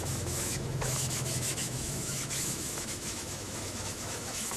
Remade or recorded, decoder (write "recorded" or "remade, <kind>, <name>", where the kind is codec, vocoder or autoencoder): remade, autoencoder, DAC-VAE